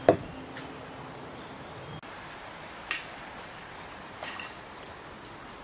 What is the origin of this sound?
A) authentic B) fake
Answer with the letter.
A